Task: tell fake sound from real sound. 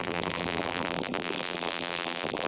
fake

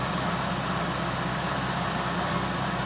real